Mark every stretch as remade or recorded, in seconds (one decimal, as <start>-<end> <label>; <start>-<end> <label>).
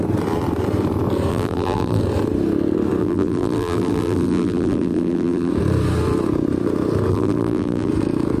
0.0-1.3 recorded; 1.3-2.0 remade; 2.0-3.0 recorded; 3.0-5.5 remade; 5.5-7.1 recorded; 7.1-7.9 remade; 7.9-8.4 recorded